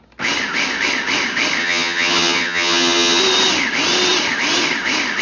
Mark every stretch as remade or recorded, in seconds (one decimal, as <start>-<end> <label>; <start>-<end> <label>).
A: 0.0-1.6 recorded; 1.6-3.2 remade; 3.2-5.2 recorded